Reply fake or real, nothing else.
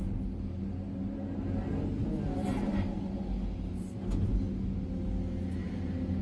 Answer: real